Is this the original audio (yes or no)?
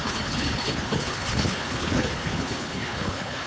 no